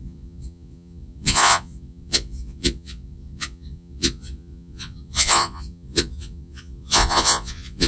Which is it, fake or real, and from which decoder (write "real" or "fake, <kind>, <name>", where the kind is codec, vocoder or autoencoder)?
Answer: fake, vocoder, Vocos